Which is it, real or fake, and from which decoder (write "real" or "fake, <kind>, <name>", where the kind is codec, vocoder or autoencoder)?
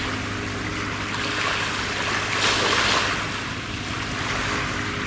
real